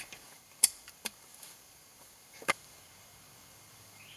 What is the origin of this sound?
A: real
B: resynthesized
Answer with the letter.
B